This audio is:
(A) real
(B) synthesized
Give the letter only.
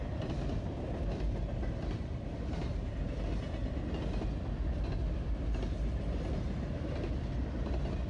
A